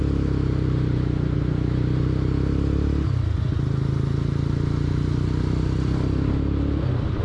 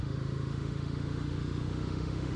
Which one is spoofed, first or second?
second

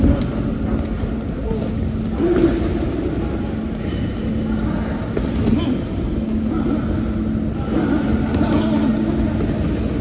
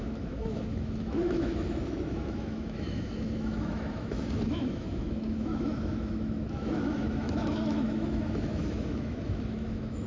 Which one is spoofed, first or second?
second